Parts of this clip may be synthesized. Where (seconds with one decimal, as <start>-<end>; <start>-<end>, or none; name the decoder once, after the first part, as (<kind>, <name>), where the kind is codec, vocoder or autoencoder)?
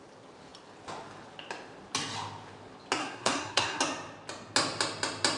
3.0-3.8 (codec, SNAC)